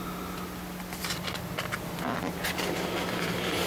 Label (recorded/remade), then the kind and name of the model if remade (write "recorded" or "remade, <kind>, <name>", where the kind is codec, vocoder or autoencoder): recorded